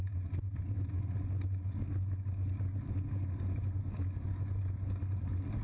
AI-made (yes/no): no